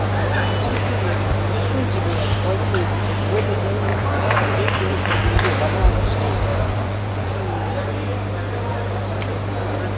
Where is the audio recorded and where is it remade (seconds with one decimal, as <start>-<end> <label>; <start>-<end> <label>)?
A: 0.0-3.9 recorded; 3.9-5.2 remade; 5.2-6.5 recorded; 6.5-7.3 remade; 7.3-10.0 recorded